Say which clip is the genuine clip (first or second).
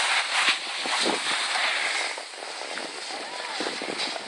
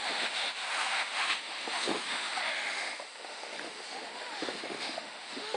first